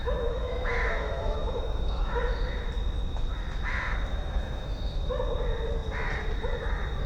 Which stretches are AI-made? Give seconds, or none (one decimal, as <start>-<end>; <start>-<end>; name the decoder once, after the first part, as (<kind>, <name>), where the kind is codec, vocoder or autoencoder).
0.0-2.2 (autoencoder, DAC-VAE); 4.1-5.1